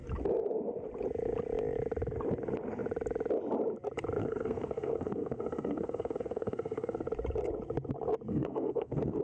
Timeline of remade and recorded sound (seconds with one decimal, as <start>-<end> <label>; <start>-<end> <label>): 0.0-4.2 recorded; 4.2-7.1 remade; 7.1-8.3 recorded; 8.3-9.2 remade